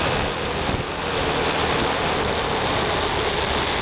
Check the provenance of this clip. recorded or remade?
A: recorded